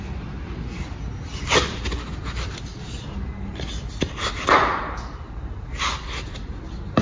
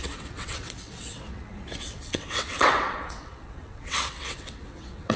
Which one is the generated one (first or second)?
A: second